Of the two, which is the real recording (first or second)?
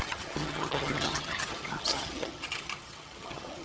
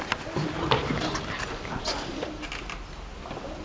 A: second